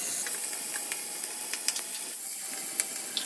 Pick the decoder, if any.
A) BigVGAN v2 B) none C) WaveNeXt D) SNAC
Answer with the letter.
B